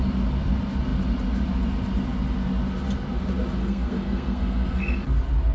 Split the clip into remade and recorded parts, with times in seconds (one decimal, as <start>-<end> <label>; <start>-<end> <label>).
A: 0.0-3.6 recorded; 3.6-4.8 remade; 4.8-5.5 recorded

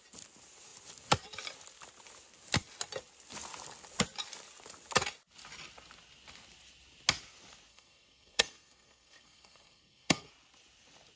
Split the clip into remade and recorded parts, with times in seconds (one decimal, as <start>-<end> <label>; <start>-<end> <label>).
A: 0.0-7.7 recorded; 7.7-10.3 remade; 10.3-11.2 recorded

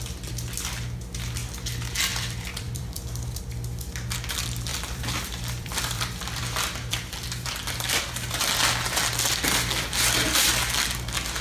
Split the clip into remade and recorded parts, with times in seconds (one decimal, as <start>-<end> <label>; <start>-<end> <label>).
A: 0.0-2.1 recorded; 2.1-3.4 remade; 3.4-4.7 recorded; 4.7-8.0 remade; 8.0-11.4 recorded

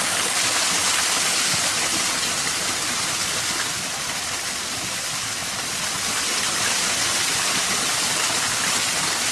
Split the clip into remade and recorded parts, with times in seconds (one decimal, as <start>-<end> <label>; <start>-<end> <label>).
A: 0.0-9.3 recorded

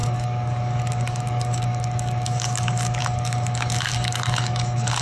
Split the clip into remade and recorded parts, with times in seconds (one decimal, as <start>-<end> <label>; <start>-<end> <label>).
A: 0.0-5.0 remade

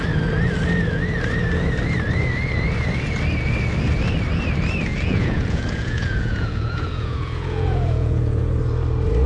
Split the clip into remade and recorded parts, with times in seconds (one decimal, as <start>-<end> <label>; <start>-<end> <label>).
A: 0.0-4.9 recorded; 4.9-8.4 remade; 8.4-9.3 recorded

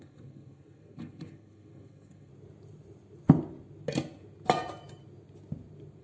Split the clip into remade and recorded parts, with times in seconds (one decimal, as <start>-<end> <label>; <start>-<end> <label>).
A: 0.0-2.3 remade; 2.3-6.0 recorded